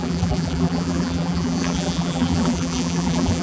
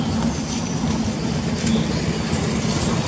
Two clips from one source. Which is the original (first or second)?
second